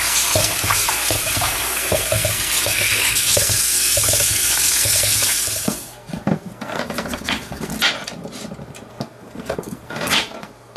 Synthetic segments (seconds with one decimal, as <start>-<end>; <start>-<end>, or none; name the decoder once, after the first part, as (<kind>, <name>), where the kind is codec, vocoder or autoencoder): 0.0-7.7 (codec, SNAC); 8.9-10.8